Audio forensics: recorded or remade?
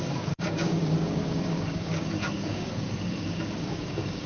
remade